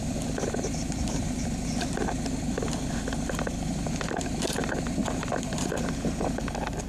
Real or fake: real